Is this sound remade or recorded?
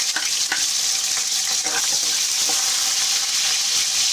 recorded